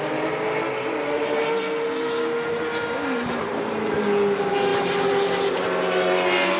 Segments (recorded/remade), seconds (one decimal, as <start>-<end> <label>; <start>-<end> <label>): 0.0-6.6 recorded